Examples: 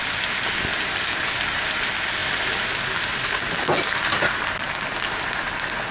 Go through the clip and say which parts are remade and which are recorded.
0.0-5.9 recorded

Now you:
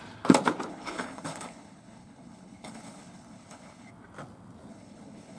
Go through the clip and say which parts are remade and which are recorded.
0.0-0.7 recorded; 0.7-3.9 remade; 3.9-4.7 recorded; 4.7-5.4 remade